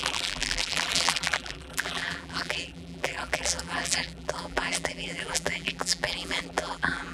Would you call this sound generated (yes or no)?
yes